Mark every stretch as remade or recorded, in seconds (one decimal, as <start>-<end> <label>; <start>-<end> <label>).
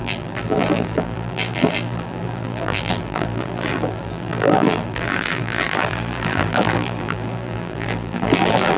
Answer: 0.0-8.8 remade